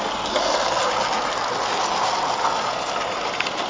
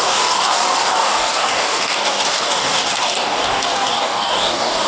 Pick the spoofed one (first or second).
second